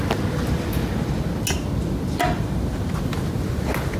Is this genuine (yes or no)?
yes